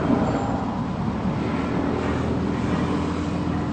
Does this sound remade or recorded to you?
recorded